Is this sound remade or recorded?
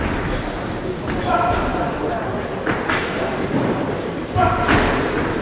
remade